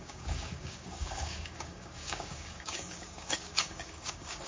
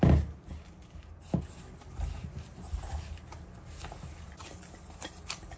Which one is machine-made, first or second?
first